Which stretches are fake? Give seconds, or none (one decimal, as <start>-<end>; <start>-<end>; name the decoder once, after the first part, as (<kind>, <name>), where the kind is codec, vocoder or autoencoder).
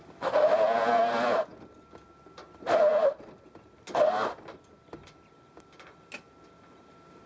none